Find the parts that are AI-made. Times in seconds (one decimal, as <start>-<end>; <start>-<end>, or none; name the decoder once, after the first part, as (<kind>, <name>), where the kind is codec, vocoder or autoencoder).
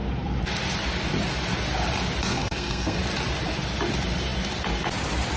2.3-3.0 (codec, SNAC)